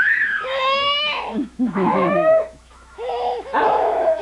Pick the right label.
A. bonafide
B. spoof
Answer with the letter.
B